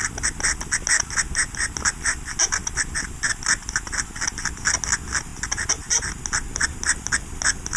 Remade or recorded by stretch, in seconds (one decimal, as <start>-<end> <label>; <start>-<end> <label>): 0.0-7.8 recorded